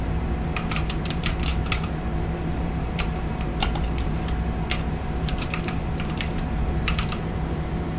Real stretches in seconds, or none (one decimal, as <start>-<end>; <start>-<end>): none